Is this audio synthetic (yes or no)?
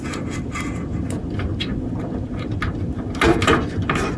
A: no